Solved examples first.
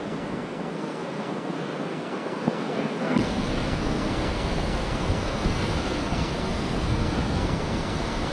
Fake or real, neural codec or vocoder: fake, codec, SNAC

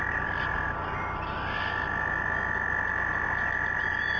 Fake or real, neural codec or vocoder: real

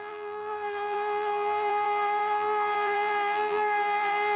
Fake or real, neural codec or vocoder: fake, vocoder, BigVGAN v2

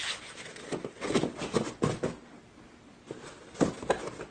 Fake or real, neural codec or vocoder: real